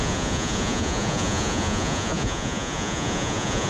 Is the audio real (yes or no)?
no